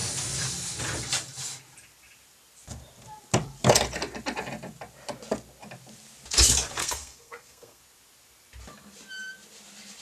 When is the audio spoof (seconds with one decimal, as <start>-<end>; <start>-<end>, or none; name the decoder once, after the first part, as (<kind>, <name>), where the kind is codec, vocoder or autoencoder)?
6.8-7.8 (codec, SNAC)